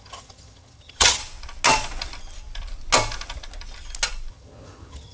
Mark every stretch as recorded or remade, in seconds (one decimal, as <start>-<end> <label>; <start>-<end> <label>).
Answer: 0.0-1.2 remade; 1.2-4.3 recorded; 4.3-5.1 remade